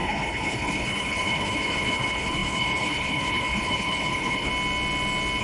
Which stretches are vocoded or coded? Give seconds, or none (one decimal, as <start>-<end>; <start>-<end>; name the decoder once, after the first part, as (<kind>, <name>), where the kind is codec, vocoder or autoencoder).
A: 0.0-4.5 (codec, HILCodec)